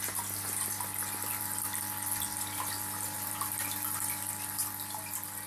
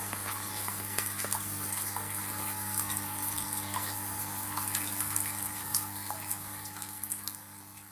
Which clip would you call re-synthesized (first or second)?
second